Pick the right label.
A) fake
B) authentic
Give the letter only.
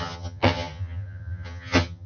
A